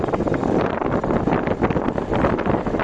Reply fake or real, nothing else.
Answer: real